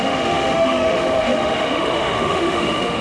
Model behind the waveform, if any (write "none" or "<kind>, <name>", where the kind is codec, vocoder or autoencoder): autoencoder, DAC-VAE